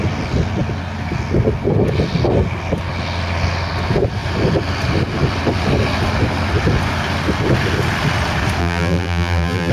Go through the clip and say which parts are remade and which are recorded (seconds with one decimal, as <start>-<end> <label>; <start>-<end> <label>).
0.0-8.6 recorded; 8.6-9.7 remade